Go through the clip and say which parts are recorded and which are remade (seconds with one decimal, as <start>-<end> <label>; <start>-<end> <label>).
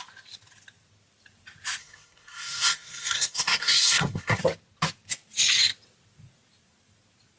0.0-1.8 recorded; 1.8-4.4 remade; 4.4-7.4 recorded